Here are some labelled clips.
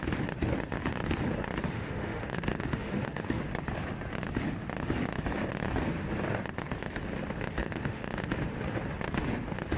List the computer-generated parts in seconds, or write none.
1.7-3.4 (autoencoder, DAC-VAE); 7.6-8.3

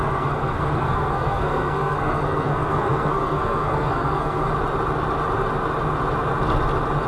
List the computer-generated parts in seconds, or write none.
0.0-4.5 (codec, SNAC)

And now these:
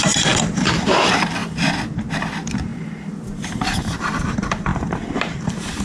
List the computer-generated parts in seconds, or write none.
0.0-1.4 (vocoder, BigVGAN v2); 2.1-5.8